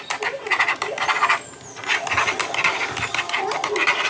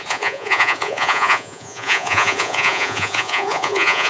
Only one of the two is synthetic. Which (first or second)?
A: second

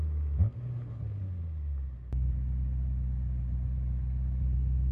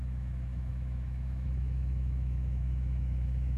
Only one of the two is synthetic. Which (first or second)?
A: second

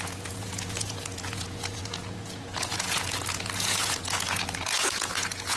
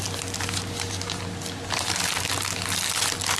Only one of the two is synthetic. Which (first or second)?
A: first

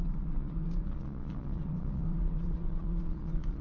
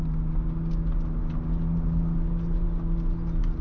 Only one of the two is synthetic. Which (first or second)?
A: first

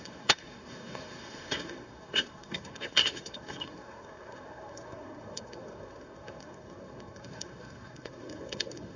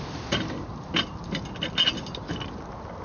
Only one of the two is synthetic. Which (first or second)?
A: first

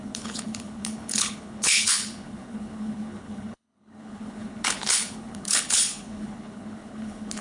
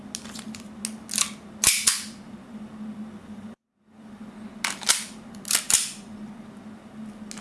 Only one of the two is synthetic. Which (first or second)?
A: first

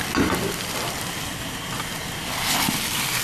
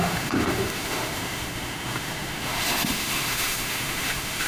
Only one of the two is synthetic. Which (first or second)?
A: second